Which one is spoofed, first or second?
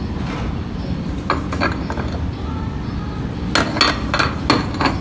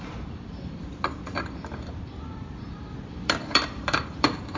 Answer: second